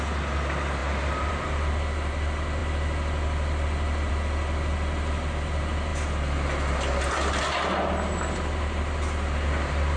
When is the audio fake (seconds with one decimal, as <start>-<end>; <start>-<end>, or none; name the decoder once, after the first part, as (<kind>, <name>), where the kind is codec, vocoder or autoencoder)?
none